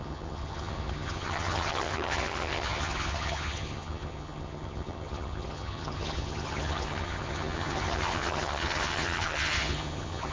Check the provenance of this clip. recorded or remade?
remade